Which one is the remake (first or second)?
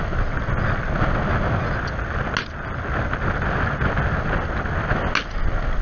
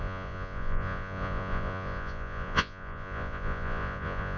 second